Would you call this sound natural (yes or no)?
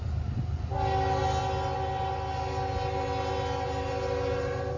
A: yes